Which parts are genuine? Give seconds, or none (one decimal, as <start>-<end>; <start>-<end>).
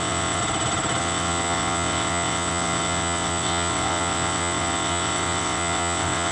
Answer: 0.4-1.0